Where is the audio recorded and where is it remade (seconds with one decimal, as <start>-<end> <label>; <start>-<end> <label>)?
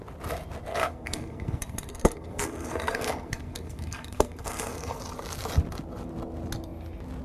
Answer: 0.0-0.7 recorded; 0.7-5.0 remade; 5.0-7.2 recorded